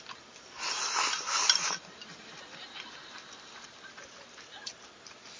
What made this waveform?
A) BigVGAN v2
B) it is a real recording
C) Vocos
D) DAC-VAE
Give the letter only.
B